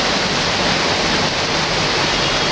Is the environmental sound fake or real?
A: real